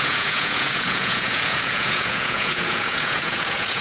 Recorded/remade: remade